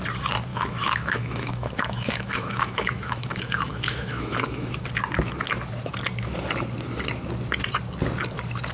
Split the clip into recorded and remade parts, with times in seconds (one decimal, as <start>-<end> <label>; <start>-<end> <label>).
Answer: 0.0-0.5 recorded; 0.5-4.8 remade; 4.8-8.7 recorded